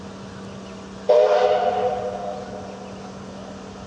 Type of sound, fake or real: real